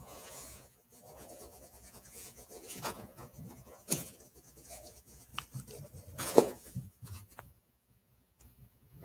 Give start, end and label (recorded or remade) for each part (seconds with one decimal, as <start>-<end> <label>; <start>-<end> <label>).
0.0-5.3 remade; 5.3-6.2 recorded; 6.2-9.0 remade